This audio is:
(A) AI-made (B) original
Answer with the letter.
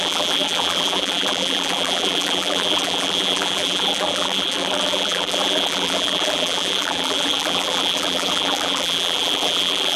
A